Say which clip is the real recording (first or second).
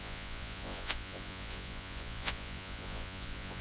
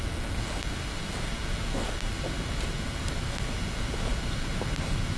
second